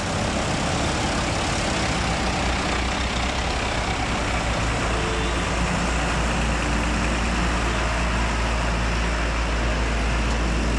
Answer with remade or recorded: recorded